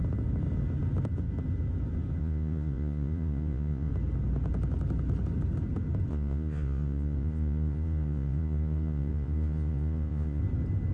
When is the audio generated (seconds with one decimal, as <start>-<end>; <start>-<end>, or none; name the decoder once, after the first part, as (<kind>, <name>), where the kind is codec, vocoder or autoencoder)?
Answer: 2.2-3.9 (vocoder, Vocos); 6.1-10.4